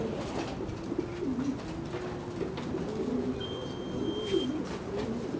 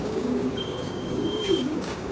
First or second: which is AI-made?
second